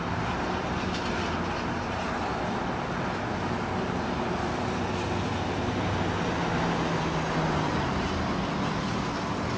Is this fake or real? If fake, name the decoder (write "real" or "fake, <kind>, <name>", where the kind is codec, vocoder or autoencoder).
real